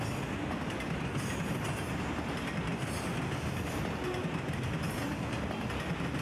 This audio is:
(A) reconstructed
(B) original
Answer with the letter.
B